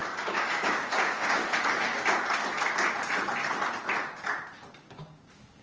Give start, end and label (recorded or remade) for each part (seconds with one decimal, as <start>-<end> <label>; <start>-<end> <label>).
0.0-1.4 remade; 1.4-4.7 recorded; 4.7-5.6 remade